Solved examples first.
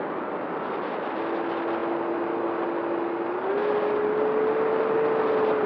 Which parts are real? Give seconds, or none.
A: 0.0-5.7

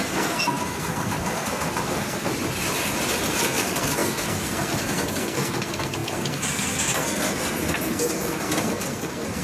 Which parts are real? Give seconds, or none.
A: 2.3-3.3

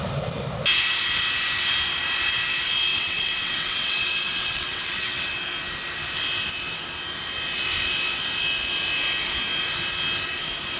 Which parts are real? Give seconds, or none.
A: 0.0-2.9; 5.3-10.8